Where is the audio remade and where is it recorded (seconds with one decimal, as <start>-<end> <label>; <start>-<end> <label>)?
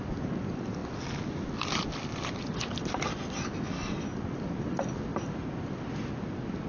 0.0-6.7 recorded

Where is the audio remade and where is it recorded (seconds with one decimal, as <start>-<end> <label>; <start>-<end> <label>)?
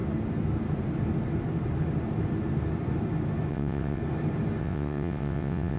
0.0-3.5 recorded; 3.5-4.0 remade; 4.0-4.6 recorded; 4.6-5.8 remade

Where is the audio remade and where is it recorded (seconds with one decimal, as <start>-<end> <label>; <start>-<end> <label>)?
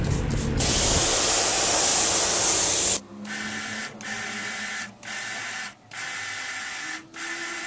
0.0-7.7 recorded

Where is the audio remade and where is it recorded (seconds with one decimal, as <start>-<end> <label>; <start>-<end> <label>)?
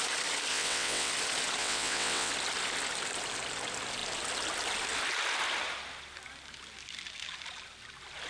0.0-0.5 recorded; 0.5-1.1 remade; 1.1-1.6 recorded; 1.6-2.3 remade; 2.3-8.3 recorded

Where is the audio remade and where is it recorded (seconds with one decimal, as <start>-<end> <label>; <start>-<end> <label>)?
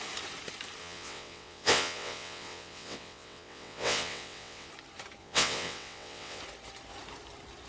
0.0-0.8 recorded; 0.8-4.7 remade; 4.7-5.2 recorded; 5.2-6.4 remade; 6.4-7.7 recorded